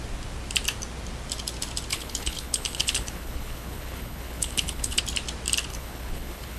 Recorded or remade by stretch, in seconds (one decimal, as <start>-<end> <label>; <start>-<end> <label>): 0.0-1.9 recorded; 1.9-5.0 remade; 5.0-5.7 recorded; 5.7-6.6 remade